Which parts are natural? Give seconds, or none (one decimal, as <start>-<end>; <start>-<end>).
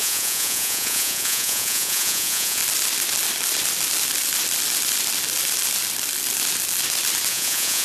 2.6-7.3